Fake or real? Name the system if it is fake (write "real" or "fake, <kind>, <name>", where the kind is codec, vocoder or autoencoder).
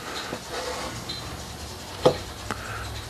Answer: real